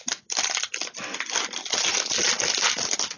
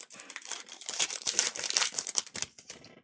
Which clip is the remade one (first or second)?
second